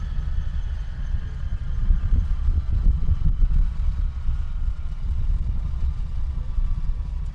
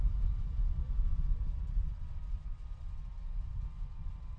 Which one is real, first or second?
second